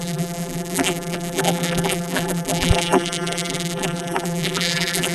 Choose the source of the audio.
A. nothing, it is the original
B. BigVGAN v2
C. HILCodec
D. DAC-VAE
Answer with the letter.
B